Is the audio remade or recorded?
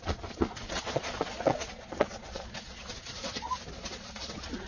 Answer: remade